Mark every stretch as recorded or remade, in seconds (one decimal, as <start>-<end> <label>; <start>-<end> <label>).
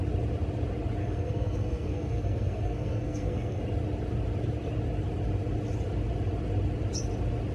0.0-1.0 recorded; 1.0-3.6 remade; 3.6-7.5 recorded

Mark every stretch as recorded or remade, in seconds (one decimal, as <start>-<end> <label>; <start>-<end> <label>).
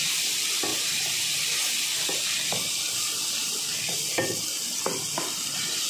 0.0-0.7 recorded; 0.7-1.7 remade; 1.7-5.9 recorded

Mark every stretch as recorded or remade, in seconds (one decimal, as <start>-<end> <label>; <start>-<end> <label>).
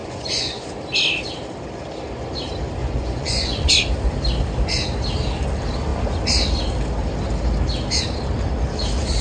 0.0-0.7 remade; 0.7-2.8 recorded; 2.8-3.7 remade; 3.7-9.2 recorded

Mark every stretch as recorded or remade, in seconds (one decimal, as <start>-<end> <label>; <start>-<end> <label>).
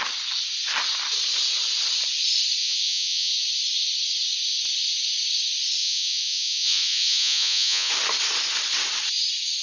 0.0-2.6 recorded; 2.6-3.3 remade; 3.3-5.8 recorded; 5.8-7.9 remade; 7.9-9.6 recorded